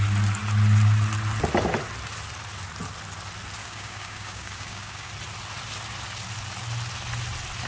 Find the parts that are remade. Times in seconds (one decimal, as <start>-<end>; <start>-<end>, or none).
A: 3.6-5.1